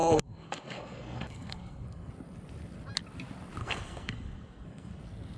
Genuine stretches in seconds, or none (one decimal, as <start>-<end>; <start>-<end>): 2.1-3.6; 5.0-5.4